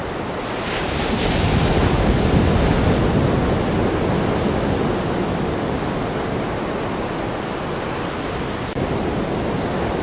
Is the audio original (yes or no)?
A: yes